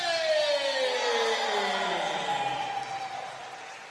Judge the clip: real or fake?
real